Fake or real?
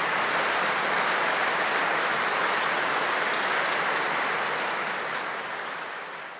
real